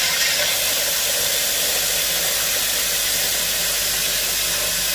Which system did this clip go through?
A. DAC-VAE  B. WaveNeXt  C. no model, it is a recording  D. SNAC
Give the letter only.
C